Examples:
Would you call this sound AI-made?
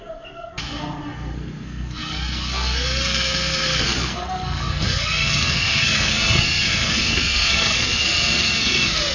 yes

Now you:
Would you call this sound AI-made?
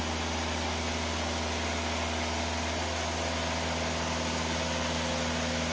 no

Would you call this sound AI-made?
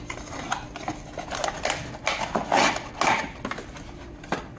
no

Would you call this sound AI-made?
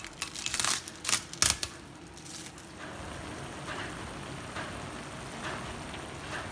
no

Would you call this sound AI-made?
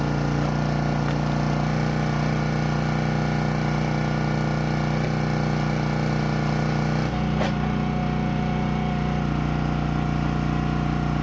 no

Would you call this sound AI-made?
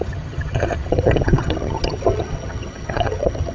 yes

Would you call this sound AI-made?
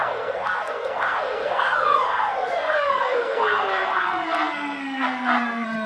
yes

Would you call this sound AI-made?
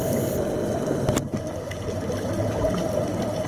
no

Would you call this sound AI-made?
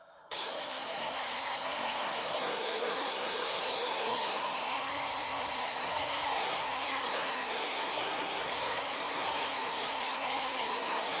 yes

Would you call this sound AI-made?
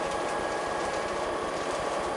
no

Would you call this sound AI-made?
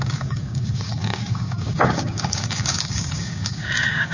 yes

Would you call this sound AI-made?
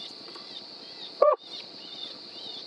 yes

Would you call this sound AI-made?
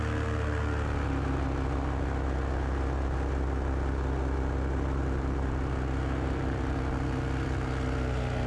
no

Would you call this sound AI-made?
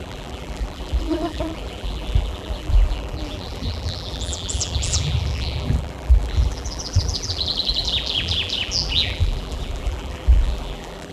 yes